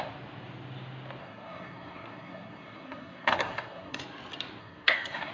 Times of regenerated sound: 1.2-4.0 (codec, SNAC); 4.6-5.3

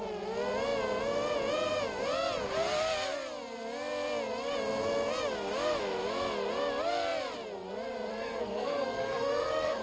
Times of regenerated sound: 8.1-9.8 (codec, SNAC)

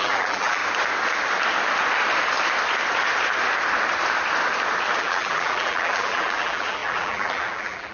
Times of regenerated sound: 0.0-0.6 (vocoder, BigVGAN v2); 5.0-7.9

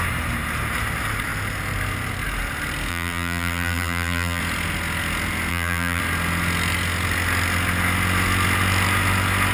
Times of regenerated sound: 2.9-4.4 (vocoder, BigVGAN v2); 5.5-6.0